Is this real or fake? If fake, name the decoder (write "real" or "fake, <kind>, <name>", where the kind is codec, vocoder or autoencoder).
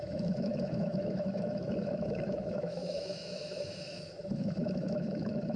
fake, autoencoder, DAC-VAE